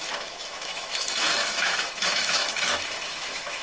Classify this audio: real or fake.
fake